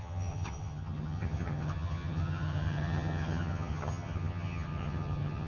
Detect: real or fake fake